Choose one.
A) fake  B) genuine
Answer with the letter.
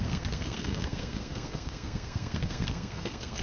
A